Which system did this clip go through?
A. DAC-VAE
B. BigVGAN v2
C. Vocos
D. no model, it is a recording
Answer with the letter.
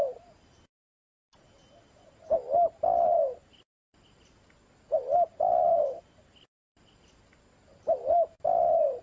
D